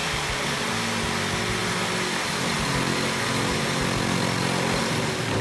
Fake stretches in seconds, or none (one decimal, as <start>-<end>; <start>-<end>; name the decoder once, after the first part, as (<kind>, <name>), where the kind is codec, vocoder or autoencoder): 0.0-0.6 (vocoder, BigVGAN v2)

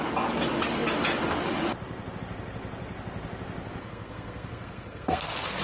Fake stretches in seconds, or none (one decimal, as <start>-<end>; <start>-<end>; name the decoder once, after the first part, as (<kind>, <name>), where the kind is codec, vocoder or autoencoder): 3.8-5.6 (codec, SNAC)

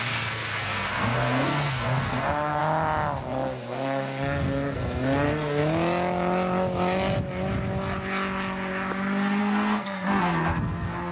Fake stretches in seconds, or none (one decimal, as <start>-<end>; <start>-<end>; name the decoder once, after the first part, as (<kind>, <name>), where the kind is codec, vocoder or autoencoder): 0.0-2.6 (codec, SNAC); 3.2-5.6; 9.4-11.1